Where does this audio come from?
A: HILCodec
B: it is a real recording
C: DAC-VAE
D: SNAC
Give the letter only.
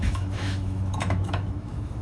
C